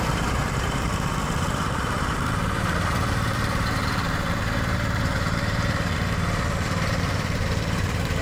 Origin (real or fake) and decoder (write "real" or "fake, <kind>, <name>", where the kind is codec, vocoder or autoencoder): fake, vocoder, BigVGAN v2